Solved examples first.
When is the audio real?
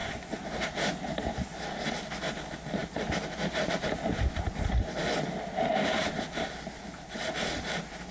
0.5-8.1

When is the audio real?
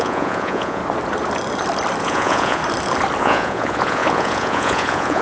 0.8-2.0; 2.6-3.2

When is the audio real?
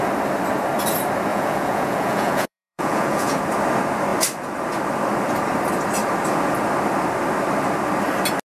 0.0-1.3; 3.4-8.5